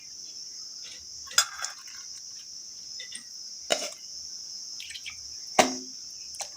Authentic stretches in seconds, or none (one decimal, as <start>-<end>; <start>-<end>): 0.0-3.7; 5.6-6.6